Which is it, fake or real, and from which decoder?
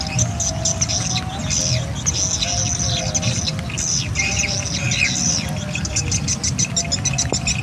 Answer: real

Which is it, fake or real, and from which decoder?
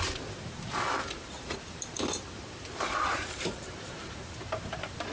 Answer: fake, vocoder, BigVGAN v2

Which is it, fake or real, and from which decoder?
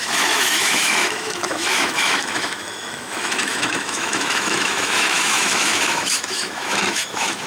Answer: fake, autoencoder, DAC-VAE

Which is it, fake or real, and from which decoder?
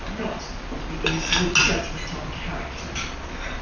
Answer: real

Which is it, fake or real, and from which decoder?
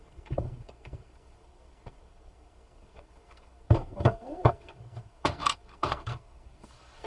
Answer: fake, codec, SNAC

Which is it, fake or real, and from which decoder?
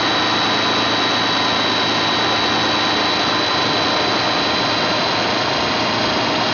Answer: real